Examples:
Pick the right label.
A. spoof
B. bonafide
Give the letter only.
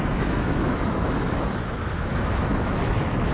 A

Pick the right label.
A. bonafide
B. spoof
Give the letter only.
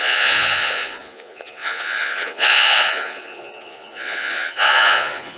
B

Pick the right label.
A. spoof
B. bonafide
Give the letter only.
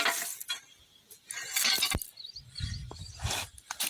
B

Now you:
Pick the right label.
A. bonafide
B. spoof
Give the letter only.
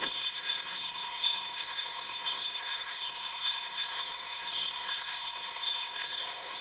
B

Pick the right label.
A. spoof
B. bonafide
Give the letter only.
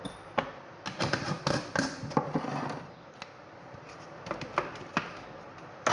B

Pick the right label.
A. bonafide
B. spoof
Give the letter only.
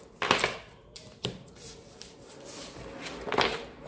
B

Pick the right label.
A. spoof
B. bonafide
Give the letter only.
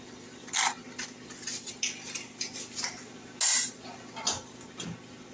B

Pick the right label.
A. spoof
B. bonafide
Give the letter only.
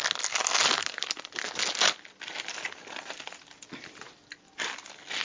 B